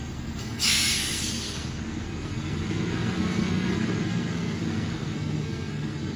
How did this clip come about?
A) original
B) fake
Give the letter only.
B